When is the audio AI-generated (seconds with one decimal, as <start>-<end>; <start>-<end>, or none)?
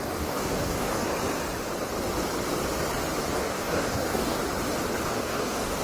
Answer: 0.0-1.1; 3.3-4.4; 5.1-5.8